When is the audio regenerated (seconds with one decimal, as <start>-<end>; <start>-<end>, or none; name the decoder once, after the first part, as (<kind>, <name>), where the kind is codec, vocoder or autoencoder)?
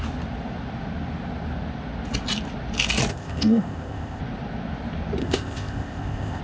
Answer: 3.1-4.2 (codec, ZipCodec); 5.2-6.4